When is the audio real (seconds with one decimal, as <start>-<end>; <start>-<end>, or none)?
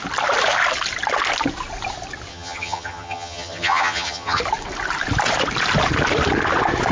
0.0-2.3; 4.4-6.9